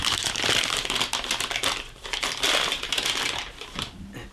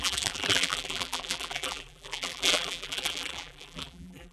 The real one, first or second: first